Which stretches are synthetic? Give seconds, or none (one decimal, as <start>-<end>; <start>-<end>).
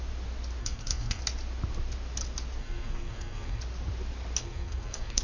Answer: 0.6-1.2; 2.6-3.6; 4.4-5.2